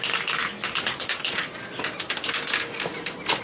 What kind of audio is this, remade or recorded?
recorded